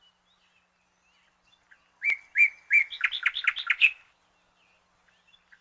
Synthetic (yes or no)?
no